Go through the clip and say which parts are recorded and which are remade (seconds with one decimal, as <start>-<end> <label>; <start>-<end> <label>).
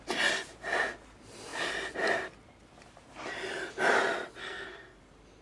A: 0.0-4.4 recorded; 4.4-5.0 remade; 5.0-5.4 recorded